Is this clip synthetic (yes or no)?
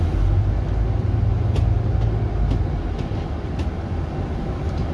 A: no